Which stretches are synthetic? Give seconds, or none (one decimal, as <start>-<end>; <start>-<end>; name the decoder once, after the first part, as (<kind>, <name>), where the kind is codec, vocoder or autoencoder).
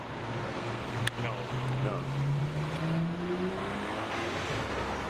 0.4-1.0 (codec, SNAC)